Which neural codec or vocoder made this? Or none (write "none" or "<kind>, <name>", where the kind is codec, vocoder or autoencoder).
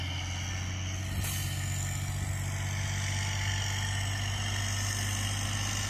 none